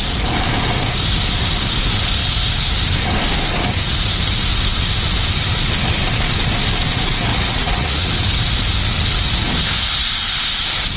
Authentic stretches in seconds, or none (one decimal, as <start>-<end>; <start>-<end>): 0.0-7.3; 8.1-11.0